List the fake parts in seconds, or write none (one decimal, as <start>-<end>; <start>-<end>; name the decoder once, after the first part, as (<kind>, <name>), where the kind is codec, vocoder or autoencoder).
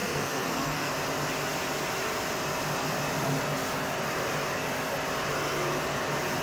0.0-0.9 (codec, SNAC)